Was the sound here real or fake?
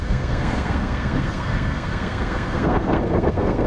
fake